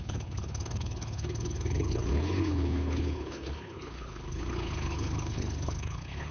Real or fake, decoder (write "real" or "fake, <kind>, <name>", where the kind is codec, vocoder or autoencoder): fake, codec, HILCodec